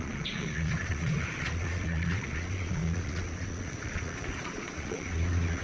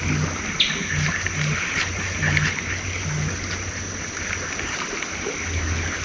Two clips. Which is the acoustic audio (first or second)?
second